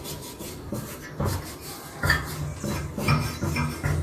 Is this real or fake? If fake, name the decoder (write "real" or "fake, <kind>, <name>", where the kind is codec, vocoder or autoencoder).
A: real